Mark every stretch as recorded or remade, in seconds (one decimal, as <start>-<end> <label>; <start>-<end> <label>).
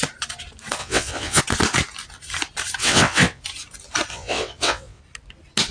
0.0-0.8 recorded; 0.8-1.4 remade; 1.4-2.8 recorded; 2.8-3.4 remade; 3.4-4.1 recorded; 4.1-5.0 remade; 5.0-5.7 recorded